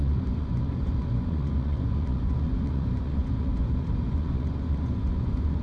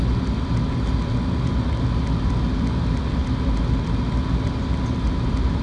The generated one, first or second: first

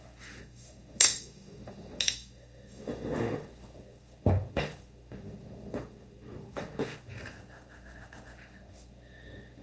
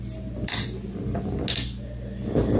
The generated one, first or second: first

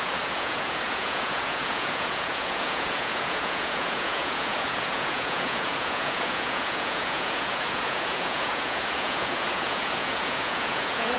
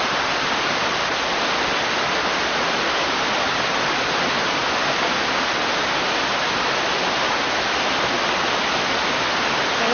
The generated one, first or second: first